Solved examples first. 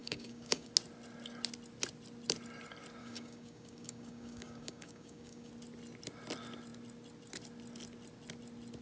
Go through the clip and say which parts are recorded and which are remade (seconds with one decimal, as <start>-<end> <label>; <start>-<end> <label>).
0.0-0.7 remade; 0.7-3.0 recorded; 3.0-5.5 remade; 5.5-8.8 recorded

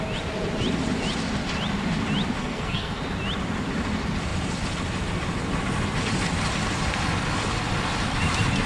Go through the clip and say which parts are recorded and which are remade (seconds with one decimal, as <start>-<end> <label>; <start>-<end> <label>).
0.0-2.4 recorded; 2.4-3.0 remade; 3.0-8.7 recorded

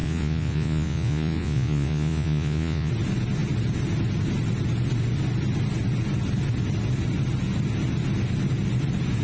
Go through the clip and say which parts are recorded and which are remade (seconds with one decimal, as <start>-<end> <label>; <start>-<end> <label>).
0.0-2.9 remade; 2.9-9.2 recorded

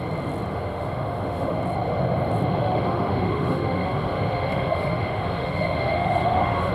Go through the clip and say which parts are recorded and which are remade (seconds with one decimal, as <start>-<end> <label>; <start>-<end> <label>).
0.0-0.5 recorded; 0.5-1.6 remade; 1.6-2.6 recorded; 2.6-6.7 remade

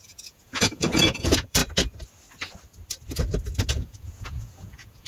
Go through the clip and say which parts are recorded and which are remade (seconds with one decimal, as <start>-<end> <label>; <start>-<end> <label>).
0.0-1.6 remade; 1.6-3.7 recorded; 3.7-5.1 remade

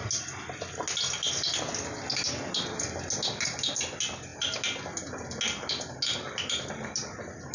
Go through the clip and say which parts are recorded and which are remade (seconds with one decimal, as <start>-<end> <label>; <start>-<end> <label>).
0.0-7.5 recorded